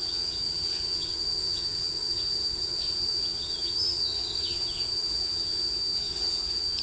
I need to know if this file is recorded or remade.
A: remade